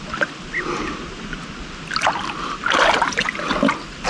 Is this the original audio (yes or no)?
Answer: yes